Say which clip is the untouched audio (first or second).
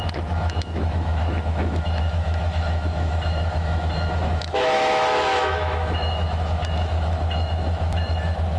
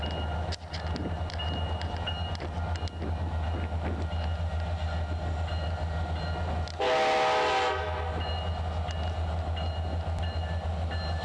second